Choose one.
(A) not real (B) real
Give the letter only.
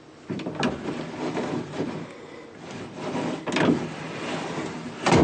B